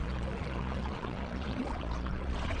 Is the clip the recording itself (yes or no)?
no